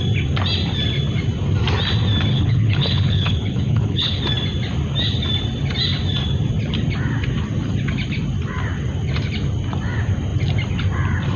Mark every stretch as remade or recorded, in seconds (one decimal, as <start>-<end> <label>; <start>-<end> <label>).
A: 0.0-2.3 recorded; 2.3-4.2 remade; 4.2-11.4 recorded